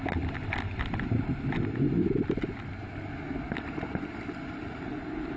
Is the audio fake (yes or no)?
no